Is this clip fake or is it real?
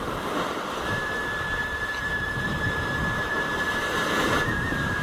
fake